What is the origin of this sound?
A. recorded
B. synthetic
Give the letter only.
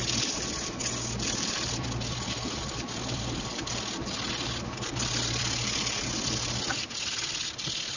B